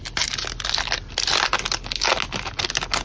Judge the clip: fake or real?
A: real